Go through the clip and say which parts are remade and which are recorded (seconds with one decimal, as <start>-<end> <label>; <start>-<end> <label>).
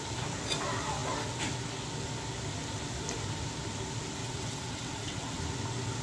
0.0-4.2 recorded; 4.2-5.4 remade; 5.4-6.0 recorded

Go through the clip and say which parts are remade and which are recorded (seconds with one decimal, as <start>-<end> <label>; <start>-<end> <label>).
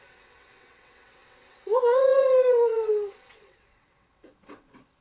0.0-5.0 remade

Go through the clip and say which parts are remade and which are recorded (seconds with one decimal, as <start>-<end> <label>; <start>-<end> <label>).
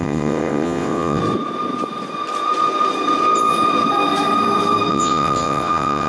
0.0-1.2 remade; 1.2-4.9 recorded; 4.9-6.1 remade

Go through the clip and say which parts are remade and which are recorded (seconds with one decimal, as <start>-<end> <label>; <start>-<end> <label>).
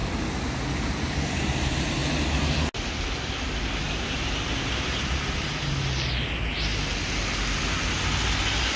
0.0-8.8 recorded